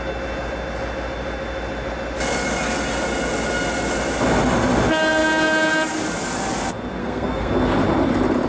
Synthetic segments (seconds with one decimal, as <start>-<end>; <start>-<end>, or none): 7.0-7.5